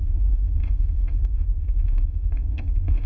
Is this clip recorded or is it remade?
remade